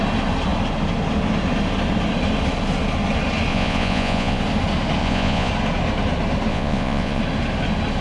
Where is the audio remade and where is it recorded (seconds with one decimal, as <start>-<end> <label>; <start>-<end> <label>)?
0.0-3.5 recorded; 3.5-4.4 remade; 4.4-5.0 recorded; 5.0-5.5 remade; 5.5-6.5 recorded; 6.5-7.2 remade; 7.2-8.0 recorded